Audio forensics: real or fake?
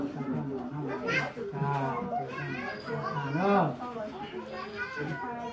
real